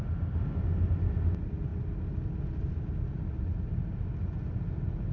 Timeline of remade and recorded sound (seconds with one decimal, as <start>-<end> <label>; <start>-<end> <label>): 0.0-5.1 recorded